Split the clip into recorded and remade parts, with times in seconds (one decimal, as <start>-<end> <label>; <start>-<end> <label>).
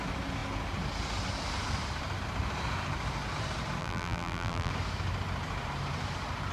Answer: 0.0-3.8 recorded; 3.8-4.7 remade; 4.7-6.5 recorded